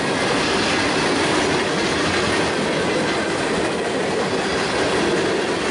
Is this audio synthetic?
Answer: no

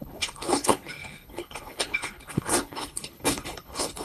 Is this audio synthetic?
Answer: yes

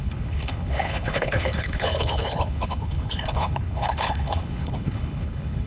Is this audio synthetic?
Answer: yes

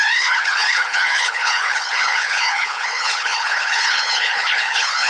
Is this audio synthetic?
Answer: yes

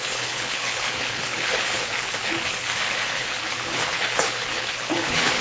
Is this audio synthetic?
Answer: yes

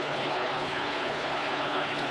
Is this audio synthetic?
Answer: yes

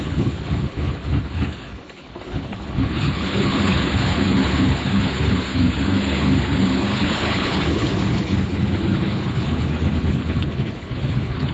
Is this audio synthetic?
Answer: yes